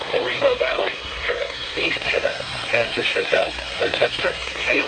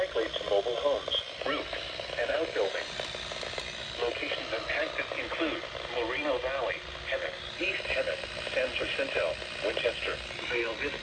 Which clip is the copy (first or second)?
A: first